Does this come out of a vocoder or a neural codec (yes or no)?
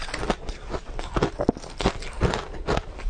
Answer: yes